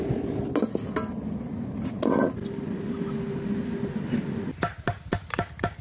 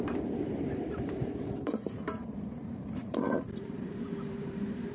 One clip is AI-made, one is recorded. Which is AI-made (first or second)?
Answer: second